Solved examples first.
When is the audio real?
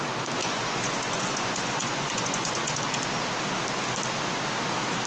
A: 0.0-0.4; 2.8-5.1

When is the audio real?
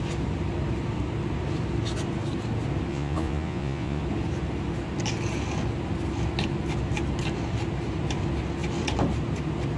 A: 0.0-2.9; 4.0-9.8